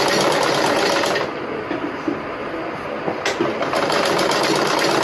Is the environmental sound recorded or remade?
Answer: recorded